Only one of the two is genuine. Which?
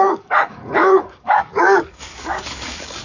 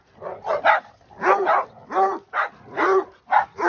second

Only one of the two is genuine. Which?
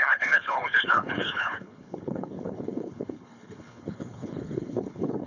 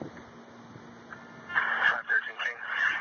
second